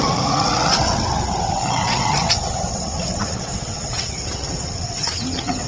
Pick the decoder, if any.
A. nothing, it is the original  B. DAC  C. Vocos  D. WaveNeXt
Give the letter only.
D